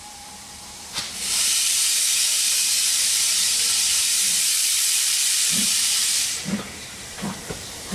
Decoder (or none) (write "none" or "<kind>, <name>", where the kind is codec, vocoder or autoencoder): vocoder, BigVGAN v2